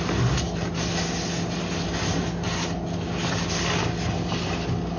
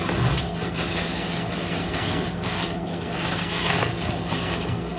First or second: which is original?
first